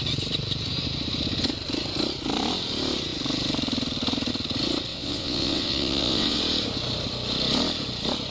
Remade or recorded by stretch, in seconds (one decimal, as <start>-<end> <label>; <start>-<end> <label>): 0.0-4.9 recorded; 4.9-6.4 remade; 6.4-8.3 recorded

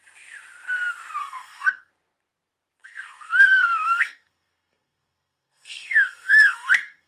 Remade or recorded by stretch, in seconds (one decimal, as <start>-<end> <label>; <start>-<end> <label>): 0.0-1.2 recorded; 1.2-1.9 remade; 1.9-2.8 recorded; 2.8-7.1 remade

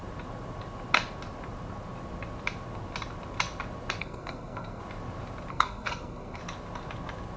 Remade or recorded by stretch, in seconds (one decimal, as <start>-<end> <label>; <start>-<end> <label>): 0.0-4.0 recorded; 4.0-4.8 remade; 4.8-5.5 recorded; 5.5-6.4 remade; 6.4-7.4 recorded